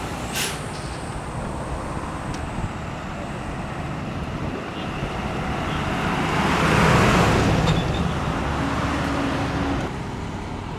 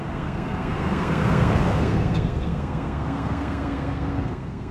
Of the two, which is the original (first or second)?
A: first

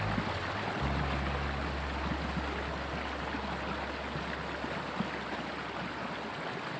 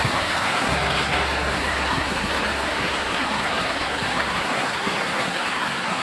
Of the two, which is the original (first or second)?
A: first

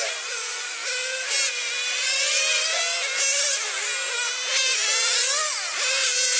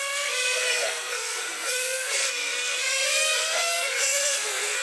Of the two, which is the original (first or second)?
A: first